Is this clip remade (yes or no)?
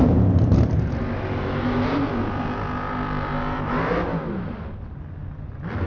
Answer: no